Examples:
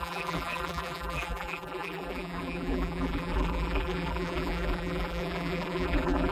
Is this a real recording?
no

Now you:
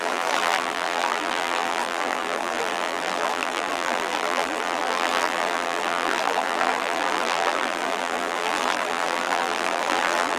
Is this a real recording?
no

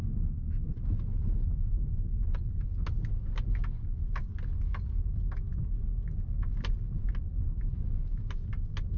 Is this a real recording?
yes